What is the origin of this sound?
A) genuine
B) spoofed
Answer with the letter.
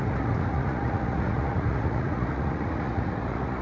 B